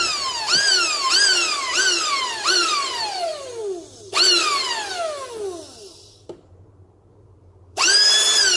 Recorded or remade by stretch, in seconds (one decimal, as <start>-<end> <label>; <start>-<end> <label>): 0.0-3.6 remade; 3.6-7.1 recorded; 7.1-8.6 remade